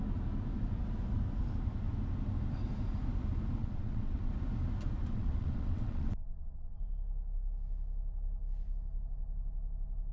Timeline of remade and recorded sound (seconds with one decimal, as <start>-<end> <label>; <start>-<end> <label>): 0.0-3.6 recorded; 3.6-4.3 remade; 4.3-5.1 recorded; 5.1-6.8 remade; 6.8-10.1 recorded